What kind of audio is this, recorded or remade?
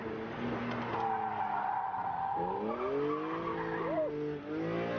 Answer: recorded